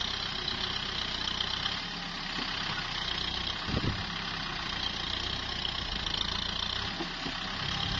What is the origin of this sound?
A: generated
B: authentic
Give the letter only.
B